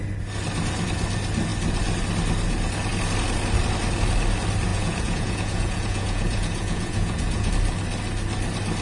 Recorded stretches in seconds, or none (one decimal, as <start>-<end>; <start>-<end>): 0.0-4.7; 7.5-8.8